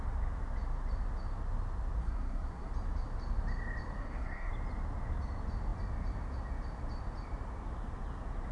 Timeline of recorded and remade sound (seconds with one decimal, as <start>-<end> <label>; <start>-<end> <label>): 0.0-2.0 recorded; 2.0-2.7 remade; 2.7-4.0 recorded; 4.0-4.5 remade; 4.5-8.5 recorded